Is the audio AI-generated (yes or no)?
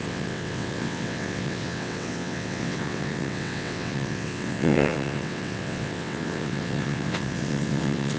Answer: yes